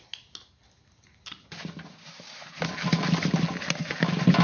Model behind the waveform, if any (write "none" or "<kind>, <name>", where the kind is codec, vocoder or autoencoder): none